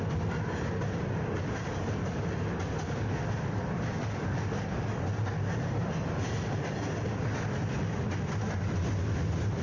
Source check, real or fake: real